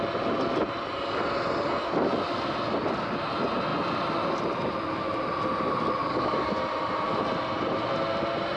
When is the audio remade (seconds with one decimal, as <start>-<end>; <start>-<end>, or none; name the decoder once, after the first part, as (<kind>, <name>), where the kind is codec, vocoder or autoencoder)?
6.0-6.5 (codec, DAC)